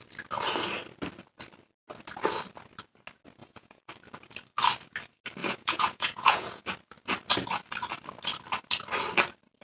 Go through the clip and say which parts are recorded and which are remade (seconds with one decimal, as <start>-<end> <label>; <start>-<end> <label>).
0.0-3.4 recorded; 3.4-3.9 remade; 3.9-5.4 recorded; 5.4-6.6 remade; 6.6-9.6 recorded